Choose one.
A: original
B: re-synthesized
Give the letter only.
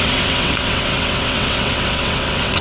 B